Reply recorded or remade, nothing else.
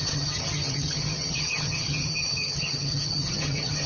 remade